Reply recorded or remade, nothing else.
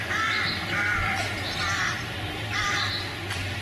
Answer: recorded